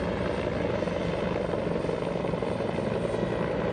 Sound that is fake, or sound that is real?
real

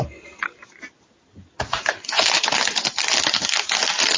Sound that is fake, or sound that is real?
real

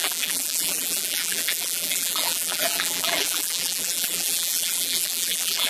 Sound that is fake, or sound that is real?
fake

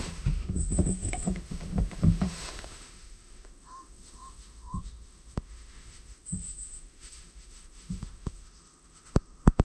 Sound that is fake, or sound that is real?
fake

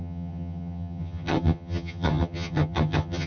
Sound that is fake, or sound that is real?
fake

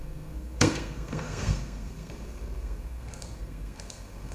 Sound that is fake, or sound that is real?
fake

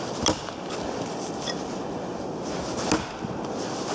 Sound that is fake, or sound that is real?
real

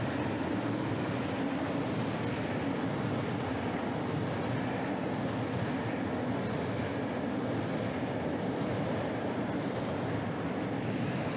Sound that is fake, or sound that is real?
real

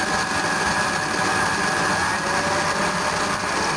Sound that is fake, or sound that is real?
real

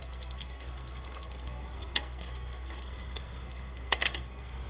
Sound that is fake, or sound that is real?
fake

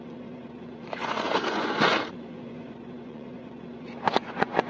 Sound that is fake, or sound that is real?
fake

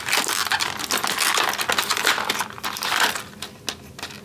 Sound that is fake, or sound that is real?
real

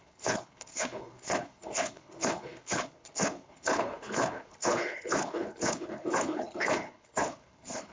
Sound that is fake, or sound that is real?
fake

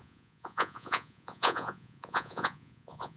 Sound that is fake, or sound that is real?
fake